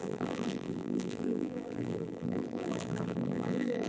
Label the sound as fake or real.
fake